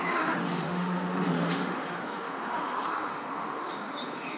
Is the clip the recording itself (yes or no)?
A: no